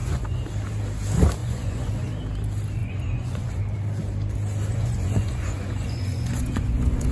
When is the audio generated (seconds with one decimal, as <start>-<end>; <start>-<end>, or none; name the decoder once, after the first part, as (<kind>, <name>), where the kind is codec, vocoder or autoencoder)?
0.0-0.5 (vocoder, Vocos); 1.4-2.1; 2.8-3.6; 4.7-7.1